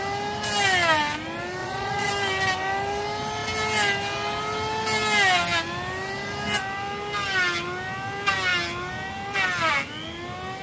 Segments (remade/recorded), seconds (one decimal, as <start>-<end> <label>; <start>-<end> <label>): 0.0-1.6 recorded; 1.6-2.1 remade; 2.1-10.6 recorded